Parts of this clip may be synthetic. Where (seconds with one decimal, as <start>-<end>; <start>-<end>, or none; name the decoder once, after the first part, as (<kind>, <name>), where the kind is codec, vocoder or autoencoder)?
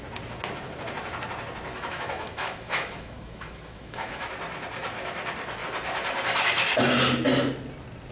1.7-4.3 (autoencoder, DAC-VAE)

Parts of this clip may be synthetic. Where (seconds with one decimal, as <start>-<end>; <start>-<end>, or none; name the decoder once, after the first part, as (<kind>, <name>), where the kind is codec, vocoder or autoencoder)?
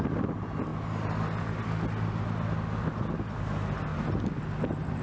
none